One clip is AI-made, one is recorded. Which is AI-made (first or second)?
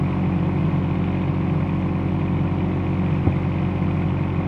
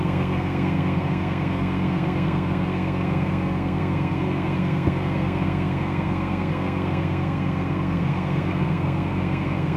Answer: second